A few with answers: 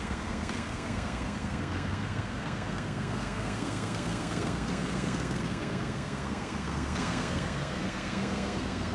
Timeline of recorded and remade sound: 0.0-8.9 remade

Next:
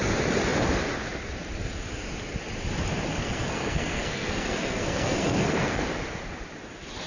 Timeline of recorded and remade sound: 0.0-3.1 recorded; 3.1-5.9 remade; 5.9-7.1 recorded

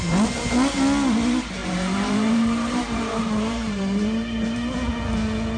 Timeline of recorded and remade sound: 0.0-1.6 recorded; 1.6-4.9 remade; 4.9-5.6 recorded

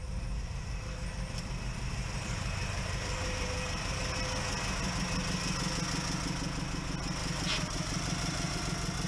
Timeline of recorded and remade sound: 0.0-4.0 remade; 4.0-7.2 recorded; 7.2-8.6 remade; 8.6-9.1 recorded